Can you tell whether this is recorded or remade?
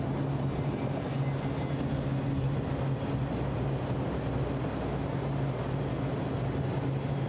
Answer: recorded